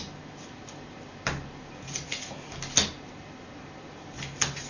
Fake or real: real